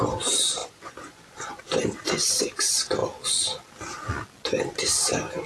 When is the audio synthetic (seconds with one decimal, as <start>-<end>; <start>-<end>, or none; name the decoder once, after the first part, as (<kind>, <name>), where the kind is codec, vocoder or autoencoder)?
0.6-1.6 (vocoder, Vocos)